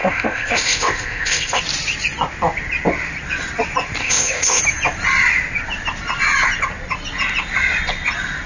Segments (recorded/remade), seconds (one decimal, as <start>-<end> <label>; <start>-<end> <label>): 0.0-1.6 remade; 1.6-4.0 recorded; 4.0-4.6 remade; 4.6-8.5 recorded